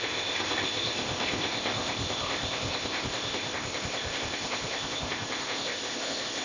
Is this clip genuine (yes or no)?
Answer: no